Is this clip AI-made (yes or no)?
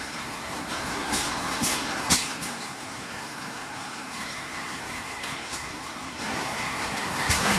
yes